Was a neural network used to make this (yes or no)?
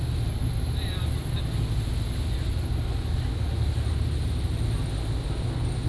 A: no